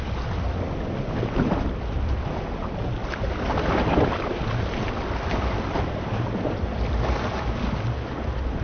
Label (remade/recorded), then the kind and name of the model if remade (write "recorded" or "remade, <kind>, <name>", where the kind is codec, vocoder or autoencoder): recorded